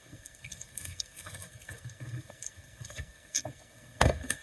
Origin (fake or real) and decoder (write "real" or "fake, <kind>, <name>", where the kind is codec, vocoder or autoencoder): fake, codec, SNAC